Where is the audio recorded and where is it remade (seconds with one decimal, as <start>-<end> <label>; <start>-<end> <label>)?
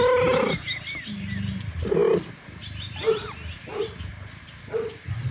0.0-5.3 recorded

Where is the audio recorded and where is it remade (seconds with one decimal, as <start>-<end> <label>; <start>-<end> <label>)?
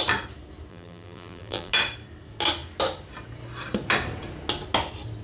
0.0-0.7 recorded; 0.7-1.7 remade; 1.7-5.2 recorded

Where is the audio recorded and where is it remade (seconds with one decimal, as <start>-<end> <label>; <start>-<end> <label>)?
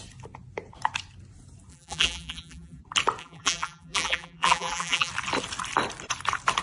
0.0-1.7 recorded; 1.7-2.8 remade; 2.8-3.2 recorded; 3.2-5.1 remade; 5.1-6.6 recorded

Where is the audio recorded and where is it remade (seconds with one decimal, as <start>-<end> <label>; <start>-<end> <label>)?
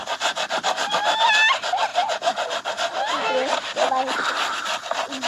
0.0-1.3 remade; 1.3-5.3 recorded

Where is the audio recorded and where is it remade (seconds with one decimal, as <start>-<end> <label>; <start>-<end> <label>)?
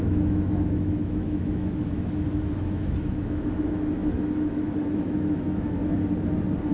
0.0-5.8 remade; 5.8-6.7 recorded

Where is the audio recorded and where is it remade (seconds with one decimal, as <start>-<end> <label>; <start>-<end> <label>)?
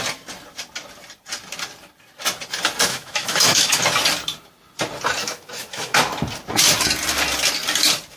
0.0-2.9 recorded; 2.9-3.8 remade; 3.8-5.2 recorded; 5.2-6.1 remade; 6.1-8.2 recorded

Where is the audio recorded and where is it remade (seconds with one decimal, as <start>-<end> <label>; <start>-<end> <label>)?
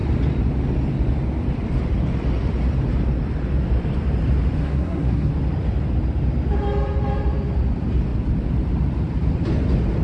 0.0-4.6 recorded; 4.6-5.3 remade; 5.3-10.0 recorded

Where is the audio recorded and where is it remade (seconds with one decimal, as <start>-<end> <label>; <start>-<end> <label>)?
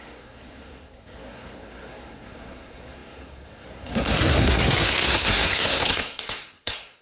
0.0-7.0 remade